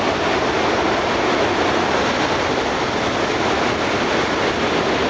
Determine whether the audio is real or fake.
real